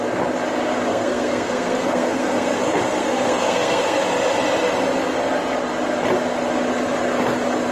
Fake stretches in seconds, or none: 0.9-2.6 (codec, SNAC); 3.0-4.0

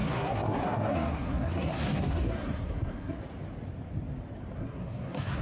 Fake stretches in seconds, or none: 0.0-3.2 (codec, SNAC); 4.6-5.4